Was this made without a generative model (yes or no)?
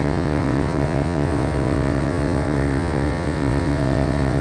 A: no